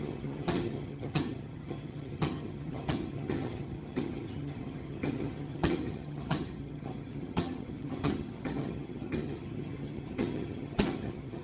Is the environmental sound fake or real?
fake